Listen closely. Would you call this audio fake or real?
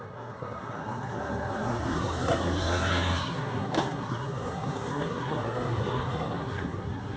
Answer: fake